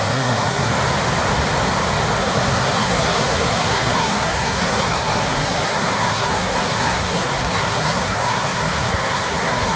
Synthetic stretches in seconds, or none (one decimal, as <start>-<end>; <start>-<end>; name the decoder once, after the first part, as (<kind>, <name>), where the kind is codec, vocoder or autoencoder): 0.0-0.7 (codec, SNAC); 2.2-9.8

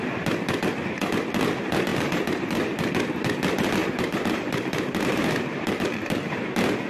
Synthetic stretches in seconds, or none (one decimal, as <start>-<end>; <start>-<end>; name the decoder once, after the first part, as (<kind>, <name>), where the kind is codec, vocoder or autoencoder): 1.9-2.9 (vocoder, BigVGAN v2); 3.8-6.5

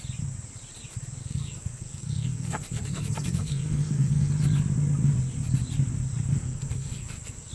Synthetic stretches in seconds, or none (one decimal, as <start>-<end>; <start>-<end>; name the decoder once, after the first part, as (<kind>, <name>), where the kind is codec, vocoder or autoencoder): 1.2-4.3 (codec, SNAC); 6.3-7.5